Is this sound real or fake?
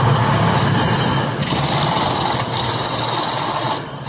real